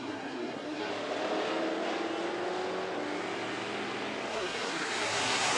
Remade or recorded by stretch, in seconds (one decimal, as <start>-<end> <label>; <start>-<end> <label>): 0.0-0.9 remade; 0.9-4.3 recorded; 4.3-5.6 remade

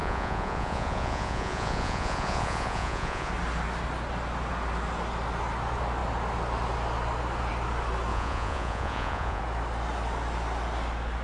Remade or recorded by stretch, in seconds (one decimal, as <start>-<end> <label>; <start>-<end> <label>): 0.0-3.3 remade; 3.3-8.1 recorded; 8.1-9.4 remade; 9.4-11.2 recorded

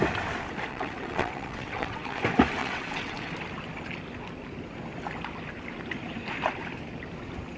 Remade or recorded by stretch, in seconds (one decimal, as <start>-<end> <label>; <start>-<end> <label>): 0.0-0.7 recorded; 0.7-2.2 remade; 2.2-2.6 recorded; 2.6-3.3 remade; 3.3-7.6 recorded

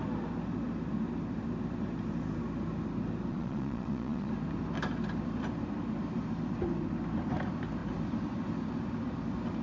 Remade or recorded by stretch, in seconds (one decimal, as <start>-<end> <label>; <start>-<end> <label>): 0.0-3.3 recorded; 3.3-4.3 remade; 4.3-9.6 recorded

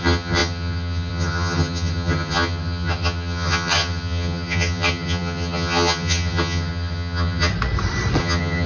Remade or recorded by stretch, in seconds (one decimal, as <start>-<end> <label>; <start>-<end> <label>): 0.0-7.5 remade; 7.5-8.2 recorded; 8.2-8.7 remade

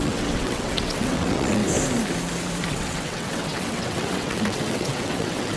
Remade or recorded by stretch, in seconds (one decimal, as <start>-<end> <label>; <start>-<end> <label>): 0.0-1.6 remade; 1.6-2.7 recorded; 2.7-5.6 remade

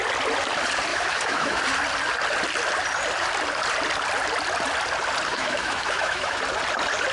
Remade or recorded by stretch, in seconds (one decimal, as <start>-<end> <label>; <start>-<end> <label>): 0.0-0.9 recorded; 0.9-1.6 remade; 1.6-5.3 recorded; 5.3-6.4 remade; 6.4-7.1 recorded

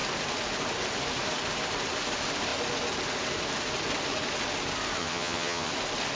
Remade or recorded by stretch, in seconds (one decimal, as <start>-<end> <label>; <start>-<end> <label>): 0.0-5.0 recorded; 5.0-5.7 remade; 5.7-6.2 recorded